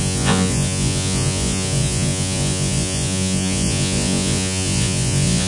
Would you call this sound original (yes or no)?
no